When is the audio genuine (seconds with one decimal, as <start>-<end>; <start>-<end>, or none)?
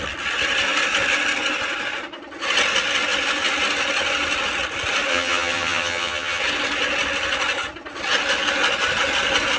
0.0-5.1; 6.4-9.6